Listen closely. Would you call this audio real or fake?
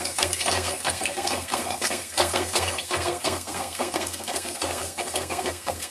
fake